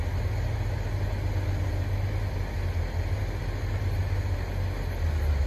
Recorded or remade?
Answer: recorded